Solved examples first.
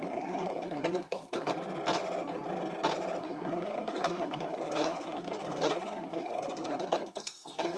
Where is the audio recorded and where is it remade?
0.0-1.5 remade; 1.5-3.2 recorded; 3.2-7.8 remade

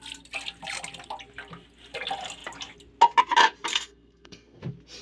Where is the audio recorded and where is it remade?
0.0-3.7 recorded; 3.7-4.6 remade; 4.6-5.0 recorded

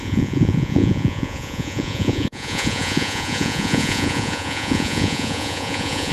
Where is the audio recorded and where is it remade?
0.0-6.1 remade

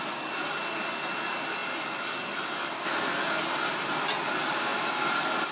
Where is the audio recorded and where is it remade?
0.0-5.5 recorded

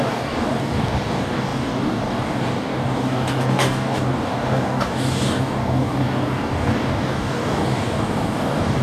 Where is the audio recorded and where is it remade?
0.0-8.8 remade

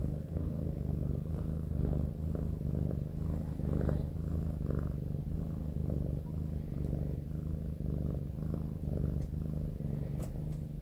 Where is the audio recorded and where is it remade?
0.0-2.1 remade; 2.1-10.8 recorded